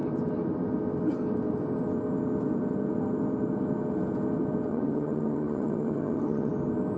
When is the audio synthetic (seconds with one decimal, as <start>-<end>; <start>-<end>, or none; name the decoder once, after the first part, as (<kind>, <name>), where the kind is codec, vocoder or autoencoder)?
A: 4.7-6.5 (vocoder, HiFi-GAN)